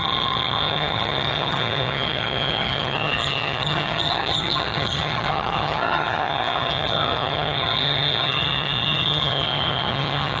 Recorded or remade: remade